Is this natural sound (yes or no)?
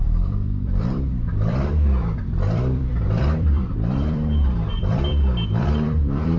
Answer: no